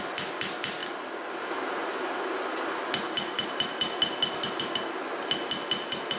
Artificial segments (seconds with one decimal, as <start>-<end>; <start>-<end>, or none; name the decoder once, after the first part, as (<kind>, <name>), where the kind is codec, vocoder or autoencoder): none